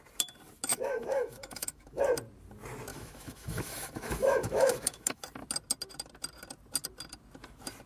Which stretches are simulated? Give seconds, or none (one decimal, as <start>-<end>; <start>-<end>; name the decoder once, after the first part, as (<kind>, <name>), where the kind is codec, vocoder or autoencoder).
0.7-2.0 (autoencoder, DAC-VAE); 2.9-5.2